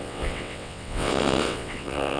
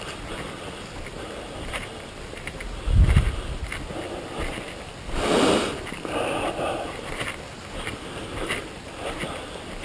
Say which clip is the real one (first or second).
second